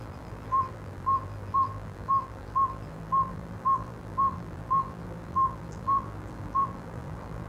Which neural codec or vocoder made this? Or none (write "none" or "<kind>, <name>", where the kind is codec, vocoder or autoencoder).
vocoder, BigVGAN v2